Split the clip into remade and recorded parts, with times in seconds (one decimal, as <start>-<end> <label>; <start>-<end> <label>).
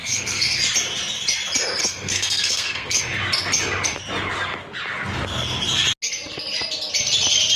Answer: 0.0-0.6 remade; 0.6-1.8 recorded; 1.8-3.0 remade; 3.0-7.6 recorded